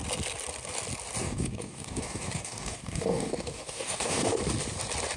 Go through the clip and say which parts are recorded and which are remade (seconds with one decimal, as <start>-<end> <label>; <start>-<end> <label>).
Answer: 0.0-1.2 recorded; 1.2-4.3 remade; 4.3-5.2 recorded